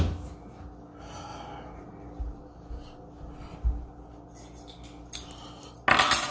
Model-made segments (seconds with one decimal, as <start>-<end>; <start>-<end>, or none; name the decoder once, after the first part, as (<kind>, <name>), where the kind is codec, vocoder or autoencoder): none